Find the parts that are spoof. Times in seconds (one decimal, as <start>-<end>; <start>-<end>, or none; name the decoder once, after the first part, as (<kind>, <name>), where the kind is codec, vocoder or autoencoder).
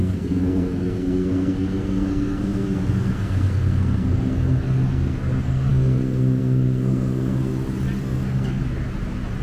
0.0-7.5 (codec, SNAC); 8.0-8.6